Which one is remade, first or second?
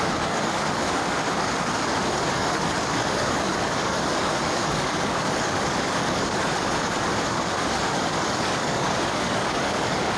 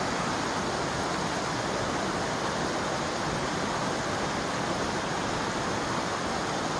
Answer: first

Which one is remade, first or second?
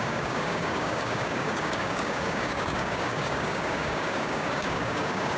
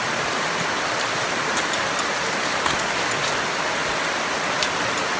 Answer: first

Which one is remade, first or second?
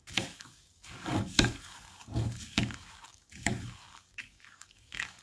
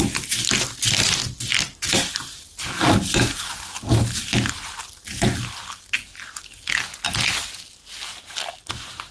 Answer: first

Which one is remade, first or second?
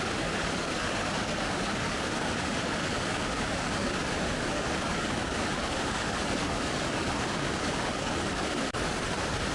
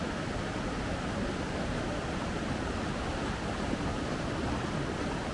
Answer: first